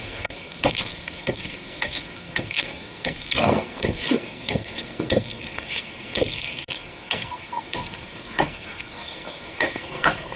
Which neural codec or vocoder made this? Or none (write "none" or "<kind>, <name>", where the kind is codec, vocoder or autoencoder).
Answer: codec, SNAC